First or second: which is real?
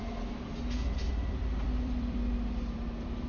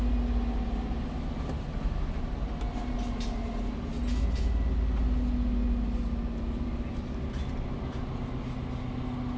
second